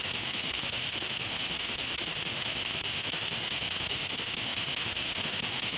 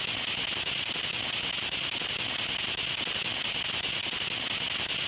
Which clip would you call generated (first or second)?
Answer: first